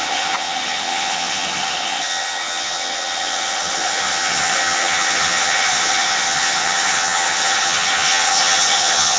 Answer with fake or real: fake